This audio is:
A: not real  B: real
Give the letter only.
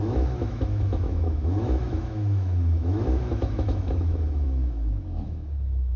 A